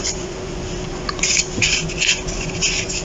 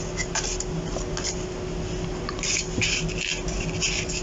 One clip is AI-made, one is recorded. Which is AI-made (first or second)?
first